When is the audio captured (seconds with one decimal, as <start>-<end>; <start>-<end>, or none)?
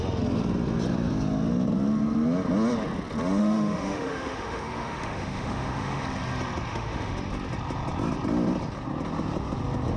0.0-3.4; 6.0-6.7; 7.3-10.0